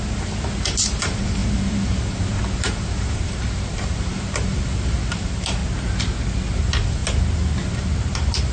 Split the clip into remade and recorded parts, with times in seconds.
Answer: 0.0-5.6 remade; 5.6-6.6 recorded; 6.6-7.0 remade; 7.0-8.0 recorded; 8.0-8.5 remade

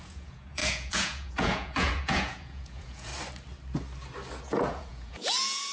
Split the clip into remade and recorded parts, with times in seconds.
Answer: 0.0-3.1 remade; 3.1-4.4 recorded; 4.4-5.7 remade

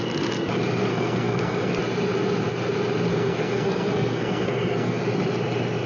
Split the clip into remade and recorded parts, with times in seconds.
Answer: 0.0-0.9 recorded; 0.9-1.7 remade; 1.7-3.1 recorded; 3.1-5.0 remade; 5.0-5.9 recorded

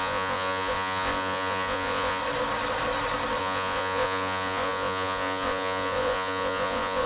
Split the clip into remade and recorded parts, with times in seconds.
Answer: 0.0-2.2 remade; 2.2-3.4 recorded; 3.4-7.1 remade